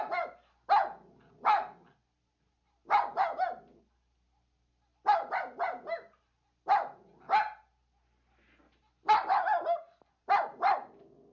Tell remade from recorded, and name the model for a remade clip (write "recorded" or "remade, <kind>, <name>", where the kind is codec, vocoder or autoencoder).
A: recorded